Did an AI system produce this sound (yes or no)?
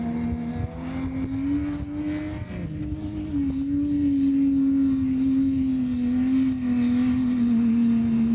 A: no